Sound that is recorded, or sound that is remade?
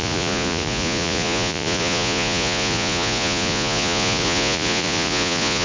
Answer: remade